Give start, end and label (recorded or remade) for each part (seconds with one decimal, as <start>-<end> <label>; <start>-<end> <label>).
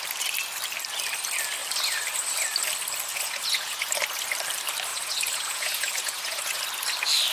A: 0.0-3.1 recorded; 3.1-3.9 remade; 3.9-4.9 recorded; 4.9-6.6 remade; 6.6-7.3 recorded